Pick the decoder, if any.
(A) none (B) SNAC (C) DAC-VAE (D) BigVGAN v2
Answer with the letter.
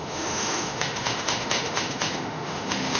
C